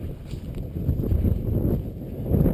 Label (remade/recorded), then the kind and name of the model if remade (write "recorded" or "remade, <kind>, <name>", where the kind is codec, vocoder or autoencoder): recorded